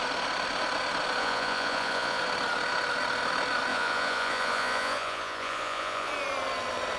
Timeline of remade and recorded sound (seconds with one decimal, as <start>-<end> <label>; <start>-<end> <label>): 0.0-1.2 recorded; 1.2-2.2 remade; 2.2-3.7 recorded; 3.7-6.1 remade; 6.1-7.0 recorded